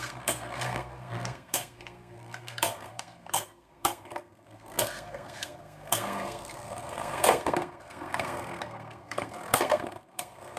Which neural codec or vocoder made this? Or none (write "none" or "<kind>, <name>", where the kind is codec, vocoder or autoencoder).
codec, SNAC